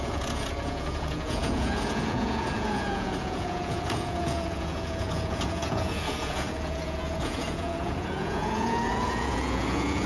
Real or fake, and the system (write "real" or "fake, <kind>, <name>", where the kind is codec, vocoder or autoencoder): fake, vocoder, Vocos